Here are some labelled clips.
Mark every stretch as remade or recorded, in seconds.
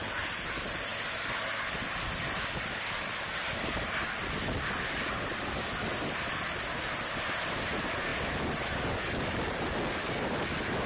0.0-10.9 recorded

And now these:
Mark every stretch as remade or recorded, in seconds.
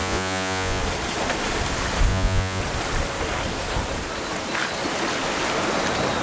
0.0-0.8 remade; 0.8-2.1 recorded; 2.1-2.6 remade; 2.6-6.2 recorded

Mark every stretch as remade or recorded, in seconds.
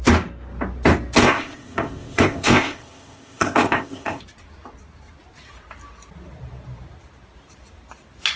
0.0-1.2 recorded; 1.2-4.2 remade; 4.2-8.4 recorded